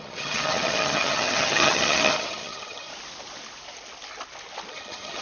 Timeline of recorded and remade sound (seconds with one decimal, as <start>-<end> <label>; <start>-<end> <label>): 0.0-2.9 remade; 2.9-4.7 recorded; 4.7-5.2 remade